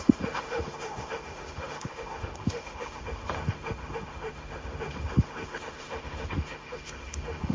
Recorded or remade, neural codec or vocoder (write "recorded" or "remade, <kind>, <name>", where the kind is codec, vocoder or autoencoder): remade, autoencoder, DAC-VAE